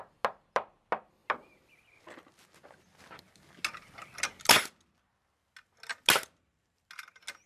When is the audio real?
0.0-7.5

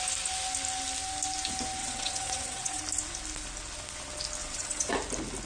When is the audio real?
0.0-1.8; 2.8-4.4; 4.9-5.5

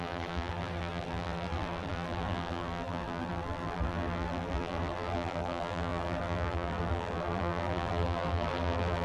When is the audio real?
none

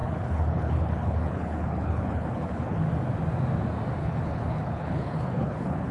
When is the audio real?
2.8-4.0